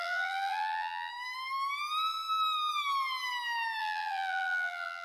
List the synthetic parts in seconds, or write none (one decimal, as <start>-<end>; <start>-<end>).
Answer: 0.0-1.1; 3.8-5.0